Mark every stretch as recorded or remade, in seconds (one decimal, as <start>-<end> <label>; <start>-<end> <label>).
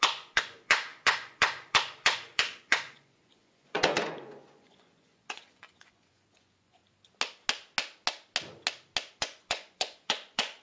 0.0-6.8 remade; 6.8-9.2 recorded; 9.2-10.6 remade